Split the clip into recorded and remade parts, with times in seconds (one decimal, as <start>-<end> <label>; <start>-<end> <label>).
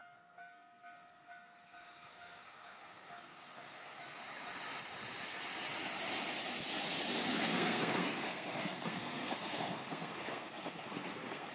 0.0-4.0 remade; 4.0-7.3 recorded; 7.3-11.5 remade